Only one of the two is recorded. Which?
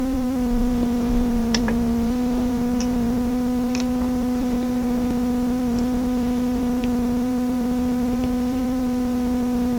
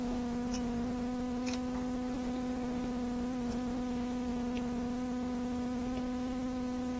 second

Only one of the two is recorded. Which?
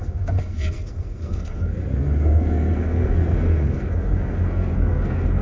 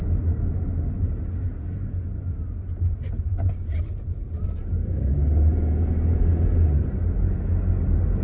second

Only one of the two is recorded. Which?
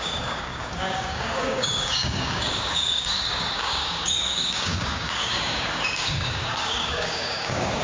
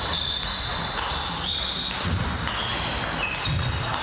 second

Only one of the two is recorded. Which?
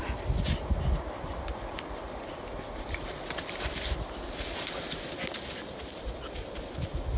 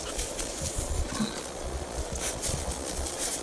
first